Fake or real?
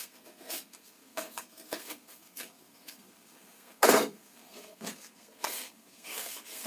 fake